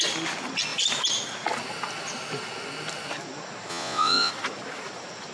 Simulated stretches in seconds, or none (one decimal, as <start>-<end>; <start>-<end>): 3.7-4.3